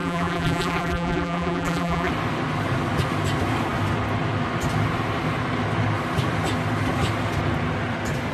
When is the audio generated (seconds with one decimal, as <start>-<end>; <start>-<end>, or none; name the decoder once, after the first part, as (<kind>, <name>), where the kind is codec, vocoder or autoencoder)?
0.0-2.1 (vocoder, BigVGAN v2)